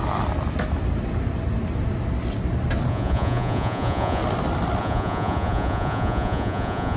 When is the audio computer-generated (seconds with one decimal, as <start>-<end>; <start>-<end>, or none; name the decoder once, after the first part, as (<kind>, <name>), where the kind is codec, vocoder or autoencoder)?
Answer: 2.9-4.2 (vocoder, Vocos); 4.8-7.0